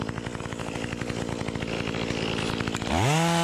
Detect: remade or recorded recorded